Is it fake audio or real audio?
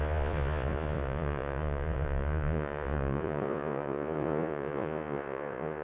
fake